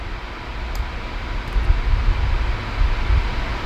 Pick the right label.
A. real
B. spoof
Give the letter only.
A